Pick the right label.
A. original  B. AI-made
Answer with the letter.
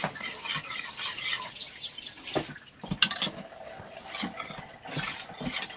A